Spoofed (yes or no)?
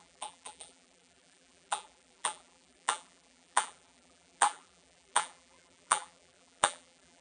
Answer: yes